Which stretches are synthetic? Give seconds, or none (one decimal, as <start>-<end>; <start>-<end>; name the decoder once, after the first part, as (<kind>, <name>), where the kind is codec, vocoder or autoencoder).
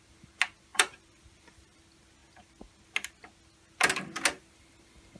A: 0.7-1.8 (vocoder, BigVGAN v2)